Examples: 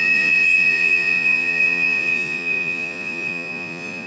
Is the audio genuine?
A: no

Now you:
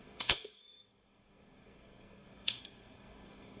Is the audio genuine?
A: no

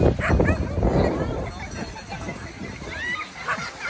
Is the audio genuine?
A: yes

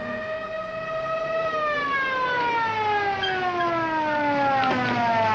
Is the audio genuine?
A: yes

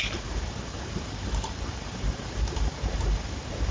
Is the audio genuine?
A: no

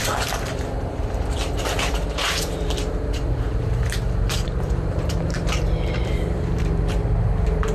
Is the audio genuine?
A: no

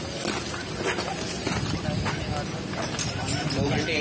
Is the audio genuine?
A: yes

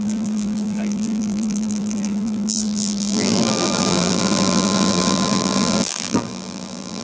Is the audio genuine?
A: no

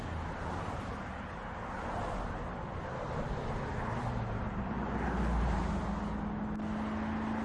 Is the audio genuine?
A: yes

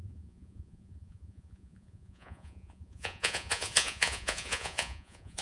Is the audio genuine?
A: no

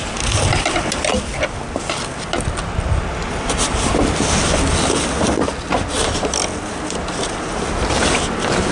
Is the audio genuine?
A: yes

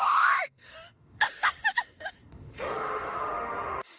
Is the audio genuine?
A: no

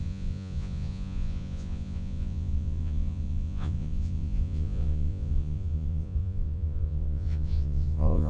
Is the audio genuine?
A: no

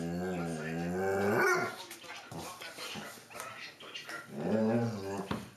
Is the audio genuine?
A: yes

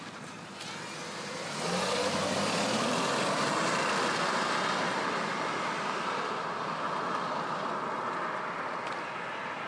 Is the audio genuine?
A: yes